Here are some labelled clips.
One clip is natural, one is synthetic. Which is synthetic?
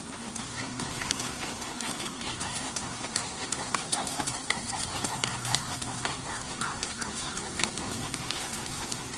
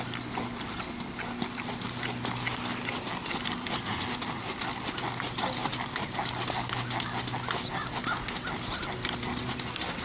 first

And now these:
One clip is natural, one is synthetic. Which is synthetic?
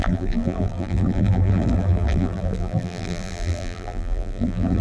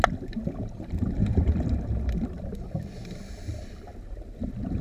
first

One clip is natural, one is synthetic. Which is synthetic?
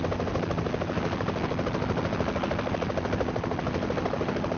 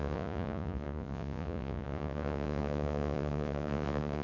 second